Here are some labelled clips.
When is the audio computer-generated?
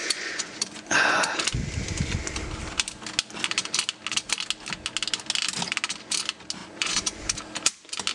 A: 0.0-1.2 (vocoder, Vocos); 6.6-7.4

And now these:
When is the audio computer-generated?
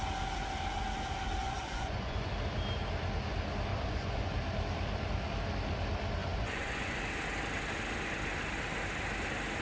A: 1.4-2.3 (vocoder, Vocos); 3.7-4.3; 6.2-7.0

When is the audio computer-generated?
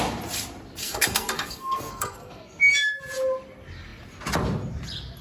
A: 0.8-3.0 (codec, SNAC)